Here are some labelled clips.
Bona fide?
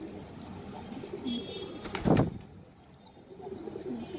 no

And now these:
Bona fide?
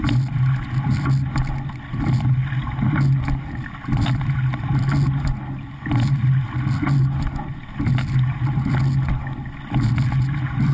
yes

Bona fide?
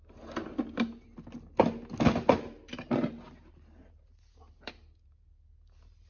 yes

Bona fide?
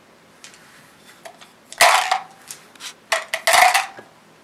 yes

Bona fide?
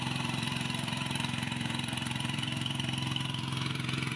no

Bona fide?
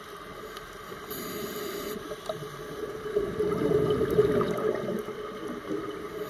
yes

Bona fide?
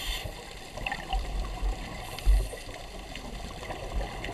no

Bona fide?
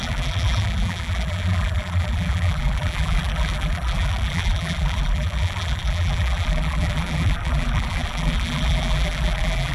no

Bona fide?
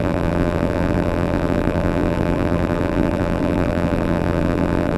no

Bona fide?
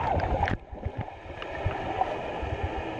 yes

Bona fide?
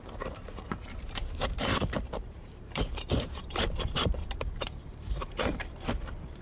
no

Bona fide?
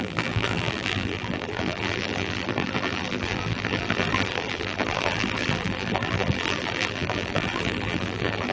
no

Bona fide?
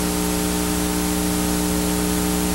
yes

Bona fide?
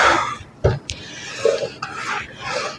no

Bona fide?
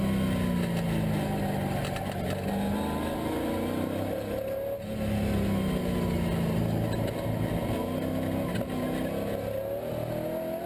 yes